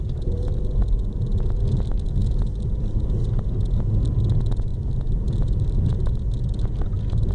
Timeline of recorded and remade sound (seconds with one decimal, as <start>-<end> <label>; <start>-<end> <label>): 0.0-7.3 recorded